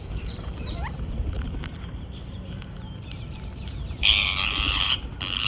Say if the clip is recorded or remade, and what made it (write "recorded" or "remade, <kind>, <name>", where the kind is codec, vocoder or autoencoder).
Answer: remade, vocoder, BigVGAN v2